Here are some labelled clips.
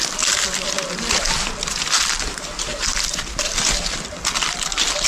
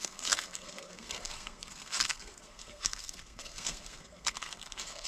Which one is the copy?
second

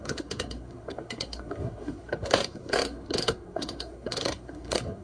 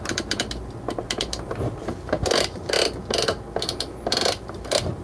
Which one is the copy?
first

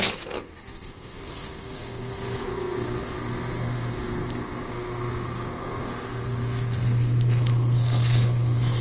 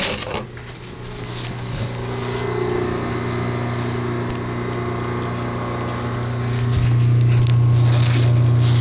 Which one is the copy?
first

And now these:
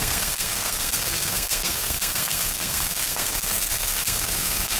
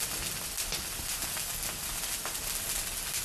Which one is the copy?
first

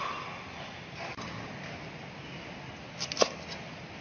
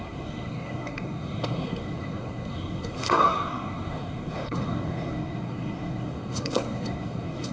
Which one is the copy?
second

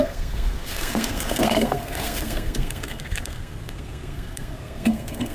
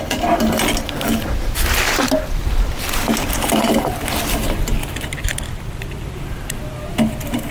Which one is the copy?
first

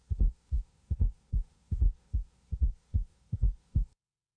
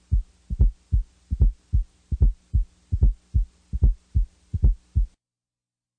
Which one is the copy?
first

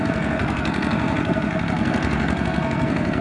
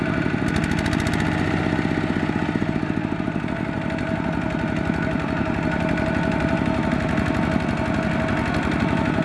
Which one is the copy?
first